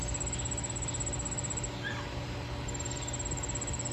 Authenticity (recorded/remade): recorded